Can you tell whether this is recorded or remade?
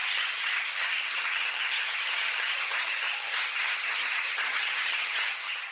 remade